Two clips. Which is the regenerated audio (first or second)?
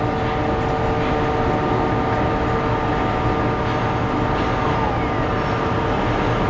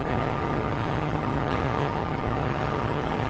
second